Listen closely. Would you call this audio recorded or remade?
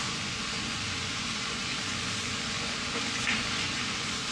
remade